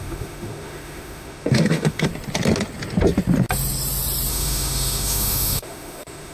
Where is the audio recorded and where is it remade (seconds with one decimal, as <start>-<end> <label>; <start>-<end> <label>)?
0.0-2.1 remade; 2.1-4.3 recorded; 4.3-6.3 remade